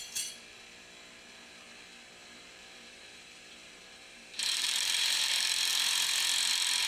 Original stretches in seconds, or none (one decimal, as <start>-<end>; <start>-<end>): 0.0-2.2; 5.3-6.9